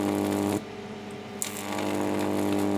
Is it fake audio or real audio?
real